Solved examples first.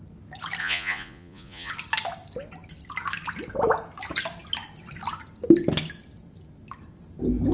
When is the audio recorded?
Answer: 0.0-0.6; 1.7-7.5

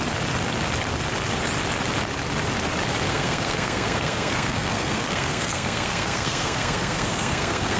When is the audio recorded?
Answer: 0.0-3.1

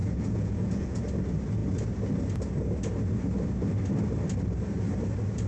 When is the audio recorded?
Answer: 1.0-5.5

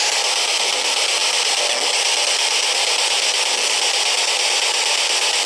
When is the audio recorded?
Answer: 0.0-5.5

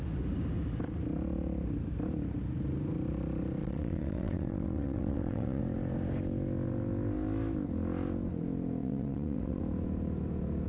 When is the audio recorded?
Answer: 0.0-3.6; 5.6-8.8; 9.6-10.7

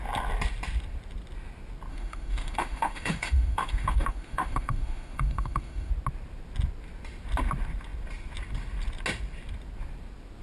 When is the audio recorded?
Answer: 0.0-1.9; 5.9-10.4

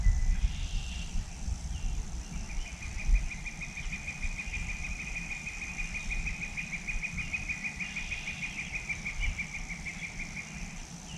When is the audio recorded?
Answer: 0.0-11.2

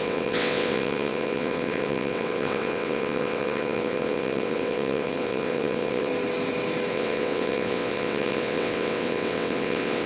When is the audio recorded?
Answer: 6.1-6.9